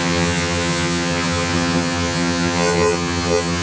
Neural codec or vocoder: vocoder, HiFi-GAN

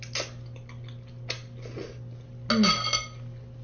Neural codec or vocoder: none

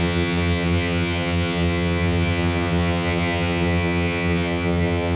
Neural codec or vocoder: vocoder, HiFi-GAN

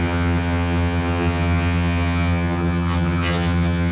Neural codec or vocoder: vocoder, HiFi-GAN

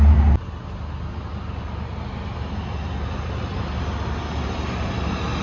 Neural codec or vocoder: none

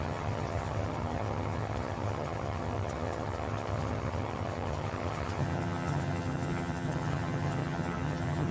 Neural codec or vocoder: vocoder, HiFi-GAN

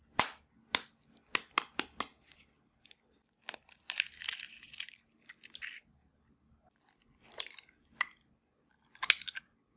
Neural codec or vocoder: none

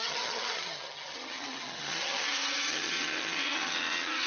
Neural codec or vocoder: vocoder, HiFi-GAN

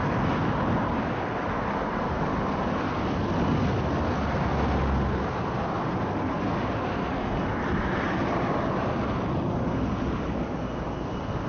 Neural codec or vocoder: none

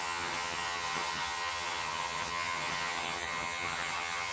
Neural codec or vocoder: vocoder, HiFi-GAN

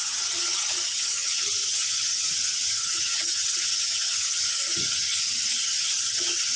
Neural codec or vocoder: vocoder, HiFi-GAN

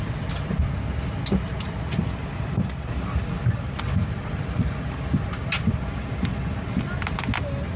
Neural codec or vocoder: none